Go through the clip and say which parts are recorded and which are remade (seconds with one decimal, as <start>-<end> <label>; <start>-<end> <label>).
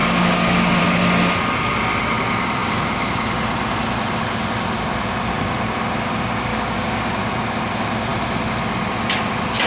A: 0.0-0.8 remade; 0.8-2.6 recorded; 2.6-3.1 remade; 3.1-6.5 recorded; 6.5-7.2 remade; 7.2-9.7 recorded